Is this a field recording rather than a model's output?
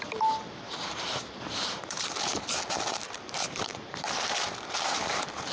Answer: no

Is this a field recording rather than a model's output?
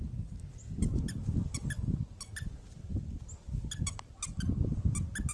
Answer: yes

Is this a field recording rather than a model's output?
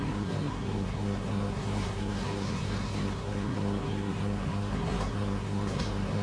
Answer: no